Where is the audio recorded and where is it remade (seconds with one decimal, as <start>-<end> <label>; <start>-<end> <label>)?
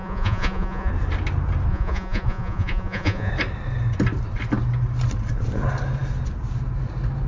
0.0-0.9 remade; 0.9-1.7 recorded; 1.7-3.3 remade; 3.3-7.3 recorded